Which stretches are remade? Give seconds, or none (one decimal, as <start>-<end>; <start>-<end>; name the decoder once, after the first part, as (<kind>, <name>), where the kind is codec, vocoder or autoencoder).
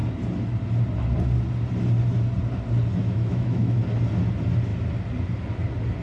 3.0-3.8 (autoencoder, DAC-VAE)